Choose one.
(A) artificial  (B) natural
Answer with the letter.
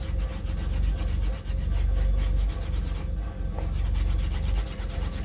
B